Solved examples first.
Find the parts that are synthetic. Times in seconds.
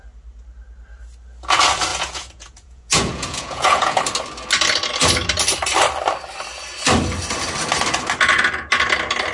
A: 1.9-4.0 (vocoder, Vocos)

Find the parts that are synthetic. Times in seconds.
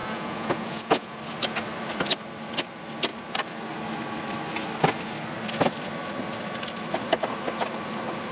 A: 0.0-1.2 (vocoder, Vocos)